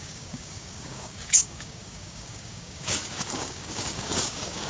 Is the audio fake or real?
fake